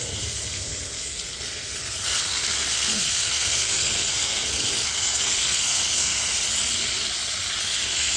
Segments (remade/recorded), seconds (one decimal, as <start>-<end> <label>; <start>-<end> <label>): 0.0-6.3 remade; 6.3-7.6 recorded; 7.6-8.2 remade